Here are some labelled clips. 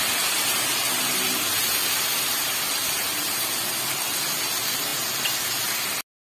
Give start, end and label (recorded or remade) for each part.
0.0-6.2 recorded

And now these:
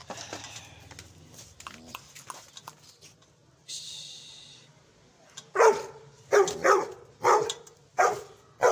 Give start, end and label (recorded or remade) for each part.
0.0-8.7 recorded